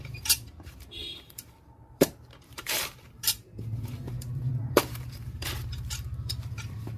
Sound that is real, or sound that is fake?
fake